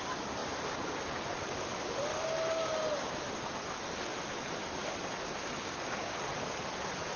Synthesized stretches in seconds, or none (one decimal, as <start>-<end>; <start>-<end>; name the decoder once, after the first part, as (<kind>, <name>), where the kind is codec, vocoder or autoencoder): 5.4-6.2 (codec, DAC)